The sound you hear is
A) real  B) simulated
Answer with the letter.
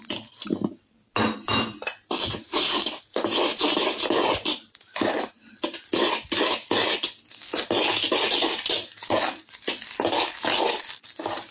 A